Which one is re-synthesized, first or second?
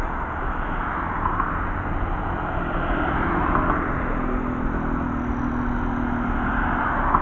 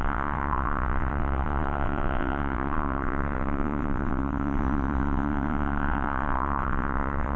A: second